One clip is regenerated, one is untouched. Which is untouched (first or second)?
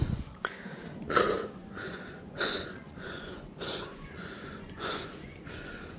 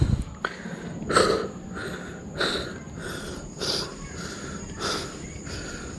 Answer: second